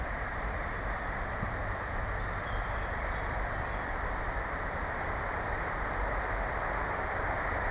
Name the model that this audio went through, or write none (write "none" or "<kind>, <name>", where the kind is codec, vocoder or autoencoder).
vocoder, BigVGAN v2